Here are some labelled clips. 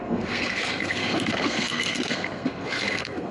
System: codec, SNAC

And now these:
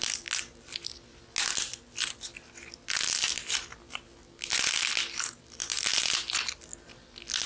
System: none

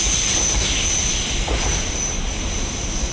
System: none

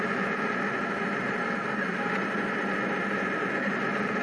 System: none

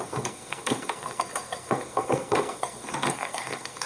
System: codec, SNAC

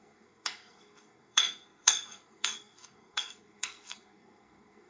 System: codec, SNAC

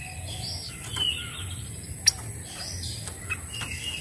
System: none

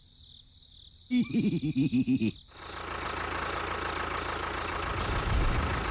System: none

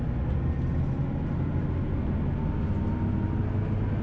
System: none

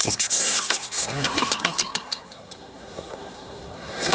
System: codec, SNAC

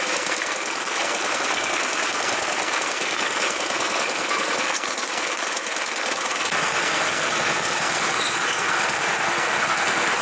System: codec, SNAC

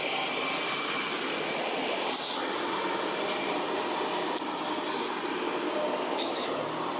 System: none